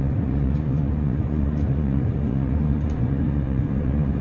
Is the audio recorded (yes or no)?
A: no